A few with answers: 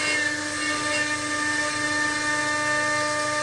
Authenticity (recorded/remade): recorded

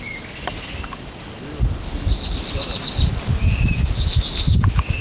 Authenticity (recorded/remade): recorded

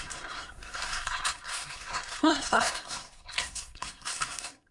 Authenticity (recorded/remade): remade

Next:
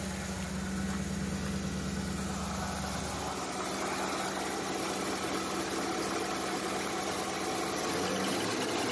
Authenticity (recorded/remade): recorded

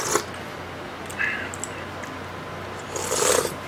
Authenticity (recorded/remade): recorded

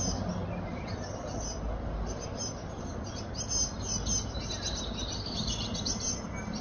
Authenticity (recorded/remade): recorded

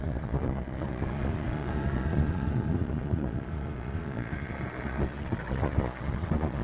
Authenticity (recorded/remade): remade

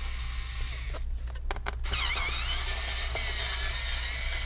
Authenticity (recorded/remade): recorded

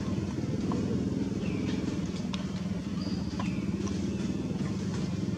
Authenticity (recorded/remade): recorded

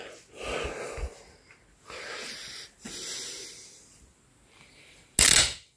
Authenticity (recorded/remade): recorded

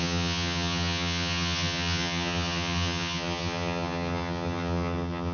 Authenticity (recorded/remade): remade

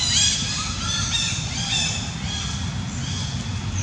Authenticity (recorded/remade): recorded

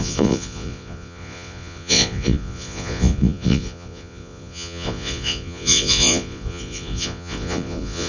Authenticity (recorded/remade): remade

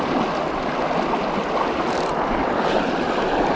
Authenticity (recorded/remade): recorded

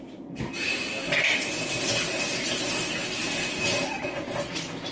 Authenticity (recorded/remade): recorded